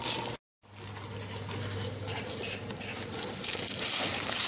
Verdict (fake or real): real